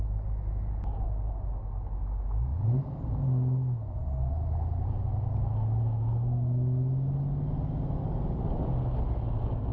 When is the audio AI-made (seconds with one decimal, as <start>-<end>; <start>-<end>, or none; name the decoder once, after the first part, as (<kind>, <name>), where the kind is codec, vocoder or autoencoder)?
none